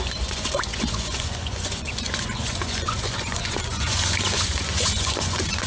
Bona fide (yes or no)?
no